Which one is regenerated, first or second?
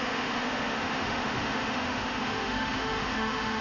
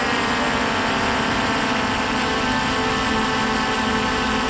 first